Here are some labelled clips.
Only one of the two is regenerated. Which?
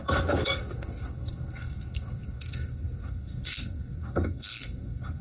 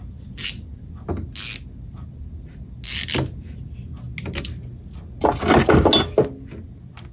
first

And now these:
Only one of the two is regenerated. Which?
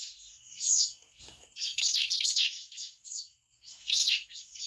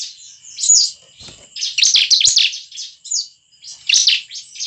first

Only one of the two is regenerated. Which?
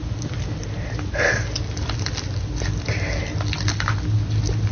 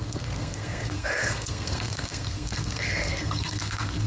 second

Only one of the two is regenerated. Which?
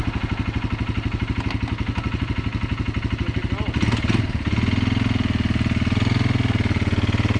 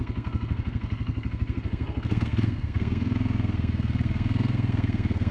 second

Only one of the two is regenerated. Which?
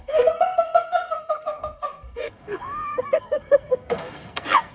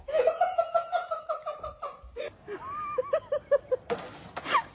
first